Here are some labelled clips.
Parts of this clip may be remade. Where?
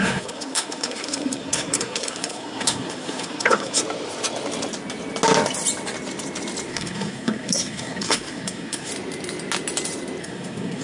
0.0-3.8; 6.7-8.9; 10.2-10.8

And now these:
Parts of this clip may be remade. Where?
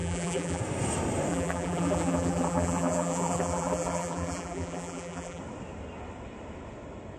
0.0-0.6; 1.3-5.4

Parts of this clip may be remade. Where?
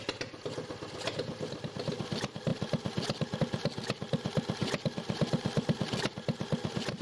2.5-3.4; 4.6-5.8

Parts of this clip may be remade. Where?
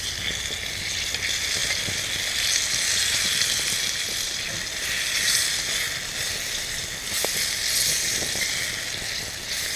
none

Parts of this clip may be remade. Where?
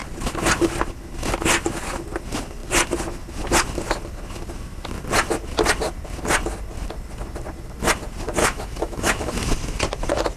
8.4-9.3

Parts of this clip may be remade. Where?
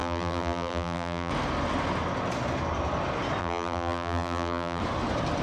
0.0-1.3; 3.4-4.8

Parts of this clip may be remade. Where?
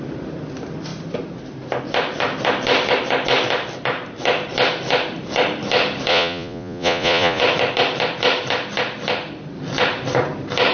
6.1-7.4